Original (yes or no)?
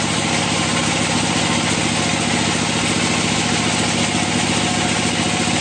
yes